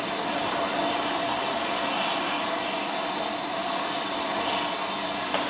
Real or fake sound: real